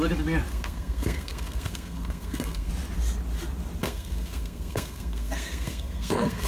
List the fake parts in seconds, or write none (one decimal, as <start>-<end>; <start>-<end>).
0.5-2.7; 3.8-6.5